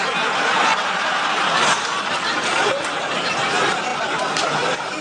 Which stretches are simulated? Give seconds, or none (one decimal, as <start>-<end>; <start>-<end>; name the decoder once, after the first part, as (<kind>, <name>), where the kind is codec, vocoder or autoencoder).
none